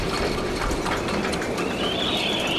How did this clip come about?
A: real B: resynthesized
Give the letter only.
A